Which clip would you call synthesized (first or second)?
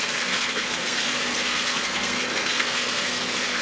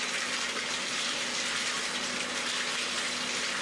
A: first